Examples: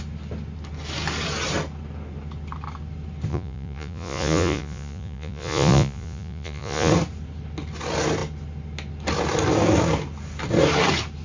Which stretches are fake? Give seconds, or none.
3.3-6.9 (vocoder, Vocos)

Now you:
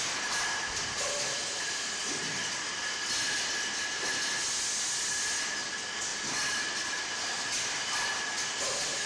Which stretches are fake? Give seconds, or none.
none